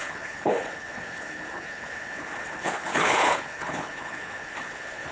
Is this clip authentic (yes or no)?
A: no